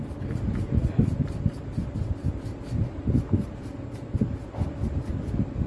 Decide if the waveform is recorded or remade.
recorded